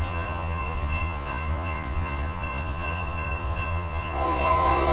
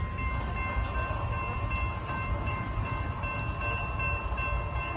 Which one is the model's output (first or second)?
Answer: first